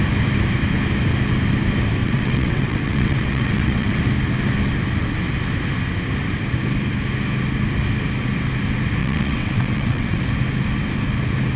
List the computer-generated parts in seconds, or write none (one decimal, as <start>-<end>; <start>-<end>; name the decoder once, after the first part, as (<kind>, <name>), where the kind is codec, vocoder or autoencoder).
2.0-4.0 (vocoder, WaveNeXt); 9.0-10.2